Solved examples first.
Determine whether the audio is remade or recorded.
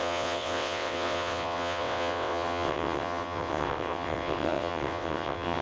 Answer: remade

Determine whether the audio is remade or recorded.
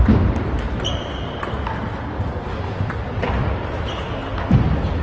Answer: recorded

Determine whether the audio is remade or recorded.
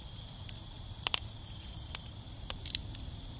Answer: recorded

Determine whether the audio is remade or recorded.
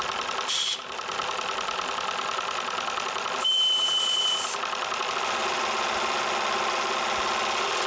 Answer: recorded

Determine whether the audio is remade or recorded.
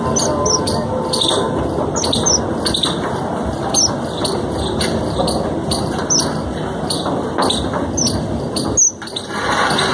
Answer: recorded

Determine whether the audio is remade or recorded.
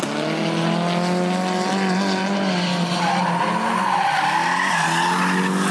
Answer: recorded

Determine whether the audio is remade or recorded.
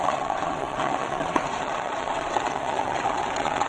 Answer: remade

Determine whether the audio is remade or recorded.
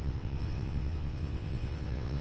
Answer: remade